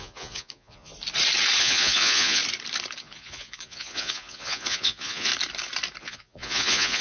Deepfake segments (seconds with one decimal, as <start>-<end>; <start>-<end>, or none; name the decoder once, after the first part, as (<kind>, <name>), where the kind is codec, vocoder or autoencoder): 0.0-0.9 (vocoder, Vocos); 1.6-2.4; 3.0-5.3; 6.0-7.0